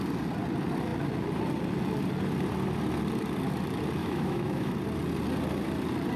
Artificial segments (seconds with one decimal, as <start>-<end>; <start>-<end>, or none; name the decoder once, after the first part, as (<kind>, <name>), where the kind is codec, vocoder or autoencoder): 4.0-4.7 (autoencoder, DAC-VAE)